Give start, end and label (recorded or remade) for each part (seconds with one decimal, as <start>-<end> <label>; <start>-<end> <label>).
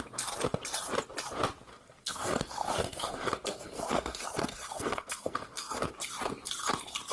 0.0-1.7 recorded; 1.7-5.9 remade; 5.9-7.1 recorded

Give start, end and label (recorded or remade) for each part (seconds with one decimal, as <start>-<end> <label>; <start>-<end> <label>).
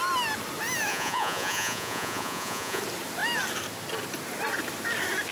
0.0-0.9 recorded; 0.9-2.8 remade; 2.8-5.3 recorded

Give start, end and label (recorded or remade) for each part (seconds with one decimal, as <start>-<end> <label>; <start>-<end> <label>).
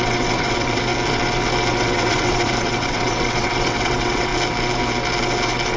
0.0-0.9 remade; 0.9-1.7 recorded; 1.7-4.3 remade; 4.3-5.8 recorded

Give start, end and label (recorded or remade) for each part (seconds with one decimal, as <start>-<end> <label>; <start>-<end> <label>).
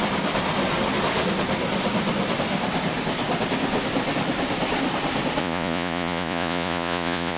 0.0-5.4 recorded; 5.4-7.4 remade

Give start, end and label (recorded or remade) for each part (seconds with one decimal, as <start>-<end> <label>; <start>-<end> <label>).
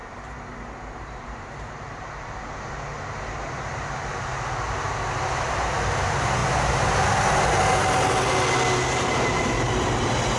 0.0-2.1 remade; 2.1-10.4 recorded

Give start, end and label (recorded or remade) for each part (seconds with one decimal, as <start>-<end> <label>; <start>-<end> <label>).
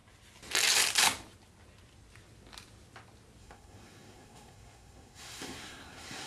0.0-3.4 recorded; 3.4-6.3 remade